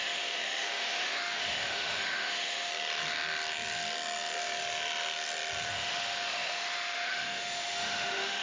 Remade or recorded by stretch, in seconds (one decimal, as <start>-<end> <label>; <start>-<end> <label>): 0.0-2.7 remade; 2.7-5.7 recorded; 5.7-8.4 remade